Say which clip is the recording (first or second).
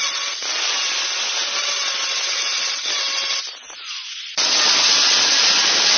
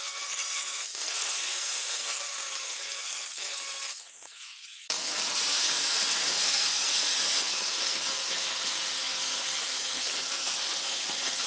first